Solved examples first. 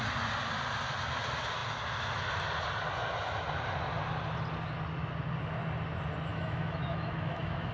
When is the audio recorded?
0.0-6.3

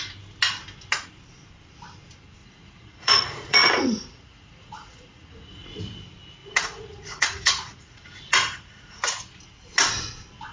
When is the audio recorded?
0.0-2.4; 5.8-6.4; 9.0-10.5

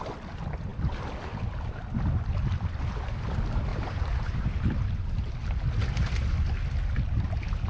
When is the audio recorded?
0.0-3.7; 5.2-7.7